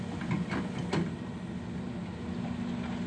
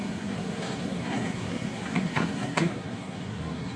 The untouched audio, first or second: first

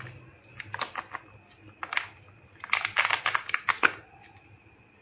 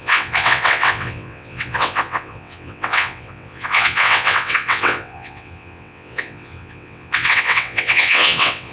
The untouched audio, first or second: first